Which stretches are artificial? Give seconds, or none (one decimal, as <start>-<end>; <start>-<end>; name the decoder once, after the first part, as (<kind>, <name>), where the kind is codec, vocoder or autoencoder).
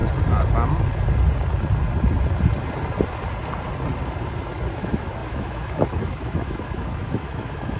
4.7-7.8 (autoencoder, DAC-VAE)